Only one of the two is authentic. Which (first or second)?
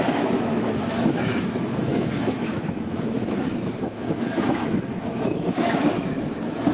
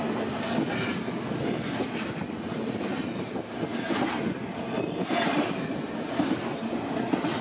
second